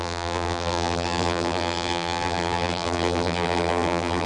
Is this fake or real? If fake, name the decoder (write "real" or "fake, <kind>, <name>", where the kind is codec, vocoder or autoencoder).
fake, vocoder, BigVGAN v2